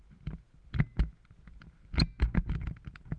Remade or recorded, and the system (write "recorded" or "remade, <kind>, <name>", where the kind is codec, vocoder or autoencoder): recorded